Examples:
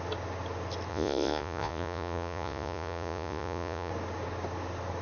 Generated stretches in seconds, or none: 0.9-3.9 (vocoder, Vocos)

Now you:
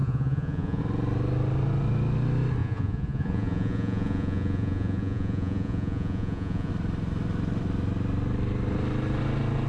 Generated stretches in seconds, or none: 0.0-0.8 (vocoder, Vocos); 2.6-6.7

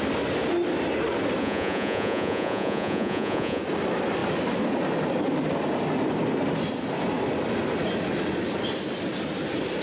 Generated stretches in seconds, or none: 1.4-3.6 (vocoder, Vocos)